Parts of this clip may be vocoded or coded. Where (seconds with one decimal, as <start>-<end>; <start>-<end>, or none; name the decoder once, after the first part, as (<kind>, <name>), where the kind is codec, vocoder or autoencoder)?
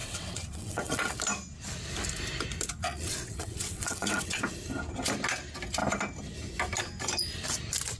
0.0-1.2 (vocoder, WaveNeXt); 2.8-4.4